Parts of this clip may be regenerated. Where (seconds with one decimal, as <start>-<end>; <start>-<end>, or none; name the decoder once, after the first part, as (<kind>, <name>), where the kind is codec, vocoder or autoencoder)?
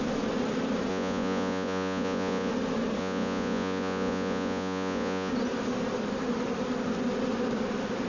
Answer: 0.9-2.5 (vocoder, Vocos); 3.0-5.3